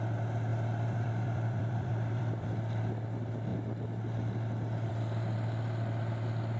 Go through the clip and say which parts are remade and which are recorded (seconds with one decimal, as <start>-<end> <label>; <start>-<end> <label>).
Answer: 0.0-0.5 recorded; 0.5-2.8 remade; 2.8-6.6 recorded